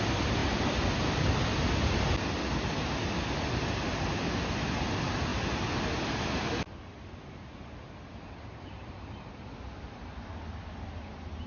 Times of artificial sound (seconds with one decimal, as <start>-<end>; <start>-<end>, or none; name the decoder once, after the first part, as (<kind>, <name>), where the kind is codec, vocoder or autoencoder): none